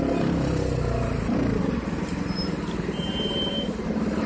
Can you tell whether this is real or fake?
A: real